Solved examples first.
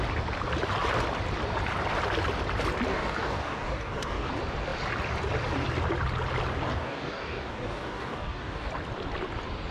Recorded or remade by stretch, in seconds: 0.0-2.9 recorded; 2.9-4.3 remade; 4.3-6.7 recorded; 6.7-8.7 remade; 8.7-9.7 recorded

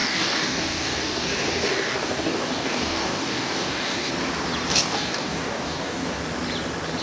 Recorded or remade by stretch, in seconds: 0.0-4.1 remade; 4.1-4.7 recorded; 4.7-6.2 remade; 6.2-7.0 recorded

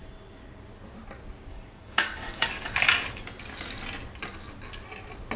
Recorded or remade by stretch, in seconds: 0.0-1.5 recorded; 1.5-3.2 remade; 3.2-5.4 recorded

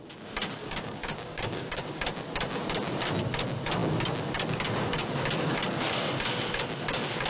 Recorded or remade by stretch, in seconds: 0.0-0.6 recorded; 0.6-2.0 remade; 2.0-7.3 recorded

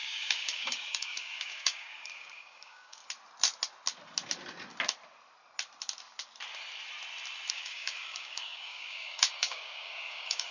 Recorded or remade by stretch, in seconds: 0.0-3.0 remade; 3.0-7.5 recorded; 7.5-10.5 remade

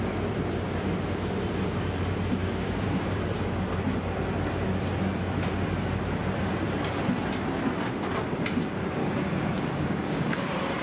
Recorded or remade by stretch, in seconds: 0.0-2.4 recorded; 2.4-3.6 remade; 3.6-9.0 recorded; 9.0-10.4 remade; 10.4-10.8 recorded

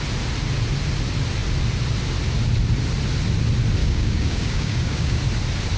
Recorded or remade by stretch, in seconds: 0.0-3.8 recorded; 3.8-5.2 remade; 5.2-5.8 recorded

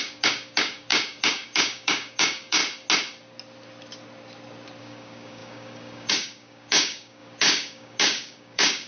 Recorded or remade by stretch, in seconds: 0.0-2.6 remade; 2.6-4.8 recorded; 4.8-8.9 remade